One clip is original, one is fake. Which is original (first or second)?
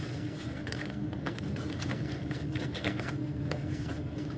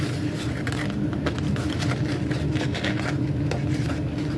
second